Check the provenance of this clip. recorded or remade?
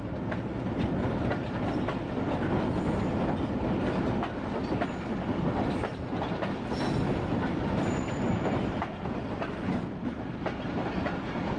recorded